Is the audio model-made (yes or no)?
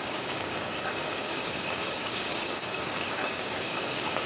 yes